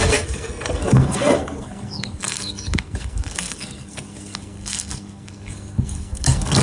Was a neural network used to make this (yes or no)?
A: yes